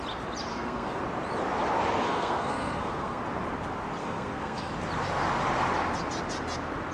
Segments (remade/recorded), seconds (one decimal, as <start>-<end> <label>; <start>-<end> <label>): 0.0-0.5 recorded; 0.5-1.0 remade; 1.0-2.0 recorded; 2.0-3.2 remade; 3.2-4.0 recorded; 4.0-4.7 remade; 4.7-6.9 recorded

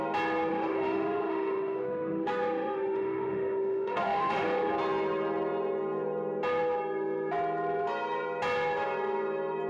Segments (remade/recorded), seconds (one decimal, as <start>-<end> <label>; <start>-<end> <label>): 0.0-0.5 recorded; 0.5-4.7 remade; 4.7-9.7 recorded

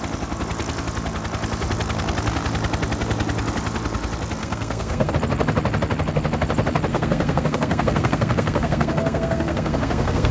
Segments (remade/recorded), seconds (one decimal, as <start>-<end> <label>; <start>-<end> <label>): 0.0-4.4 recorded; 4.4-5.1 remade; 5.1-6.9 recorded; 6.9-10.3 remade

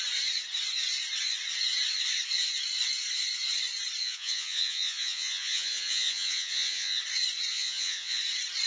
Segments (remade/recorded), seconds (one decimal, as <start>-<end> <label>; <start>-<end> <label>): 0.0-4.0 recorded; 4.0-7.0 remade; 7.0-7.5 recorded; 7.5-8.2 remade; 8.2-8.7 recorded

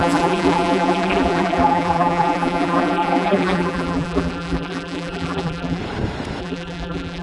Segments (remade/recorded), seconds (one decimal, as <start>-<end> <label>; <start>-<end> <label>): 0.0-5.8 remade; 5.8-6.4 recorded; 6.4-7.2 remade

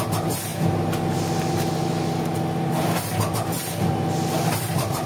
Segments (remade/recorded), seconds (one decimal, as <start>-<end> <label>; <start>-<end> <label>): 0.0-5.1 recorded